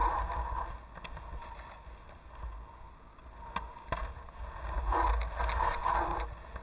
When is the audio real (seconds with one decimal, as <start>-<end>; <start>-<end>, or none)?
0.0-6.6